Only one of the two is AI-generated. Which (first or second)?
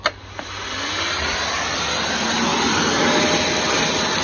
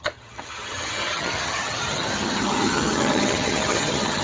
second